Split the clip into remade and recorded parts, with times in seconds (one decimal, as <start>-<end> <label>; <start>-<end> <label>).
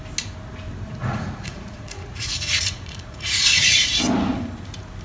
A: 0.0-1.0 recorded; 1.0-4.0 remade; 4.0-5.0 recorded